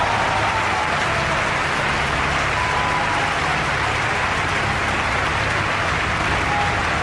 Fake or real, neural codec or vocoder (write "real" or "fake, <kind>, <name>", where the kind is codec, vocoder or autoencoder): real